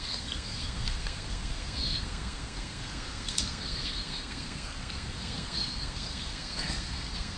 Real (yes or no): no